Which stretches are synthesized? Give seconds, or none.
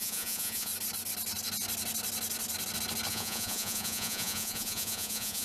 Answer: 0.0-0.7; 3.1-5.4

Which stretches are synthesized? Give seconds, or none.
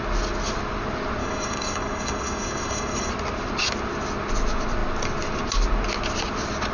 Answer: 1.2-3.1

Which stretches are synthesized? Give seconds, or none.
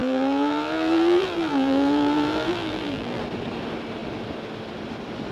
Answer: 0.0-3.2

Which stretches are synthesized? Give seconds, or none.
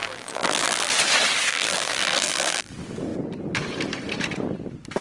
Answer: 0.0-0.9; 1.5-2.7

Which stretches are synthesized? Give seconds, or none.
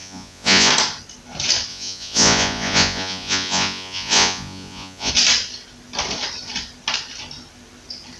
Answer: 0.0-0.7; 1.7-5.1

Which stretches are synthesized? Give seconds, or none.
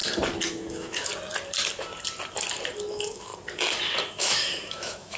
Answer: 0.5-1.1; 2.9-3.3; 4.1-5.2